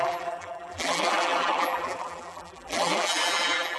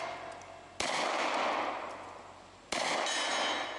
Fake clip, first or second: first